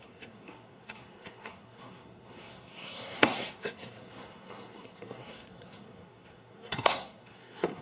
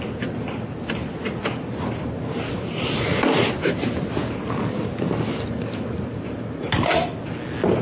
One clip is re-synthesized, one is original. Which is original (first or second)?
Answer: second